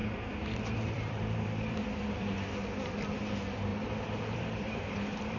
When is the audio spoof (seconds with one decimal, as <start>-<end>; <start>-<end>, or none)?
0.0-3.2; 3.7-5.4